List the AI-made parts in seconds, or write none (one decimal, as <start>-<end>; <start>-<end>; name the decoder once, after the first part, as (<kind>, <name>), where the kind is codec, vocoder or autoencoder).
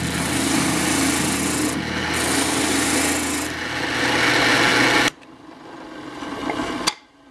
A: none